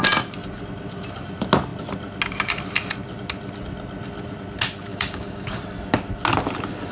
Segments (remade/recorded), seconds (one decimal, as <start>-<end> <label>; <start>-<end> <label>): 0.0-4.9 recorded; 4.9-5.6 remade; 5.6-6.9 recorded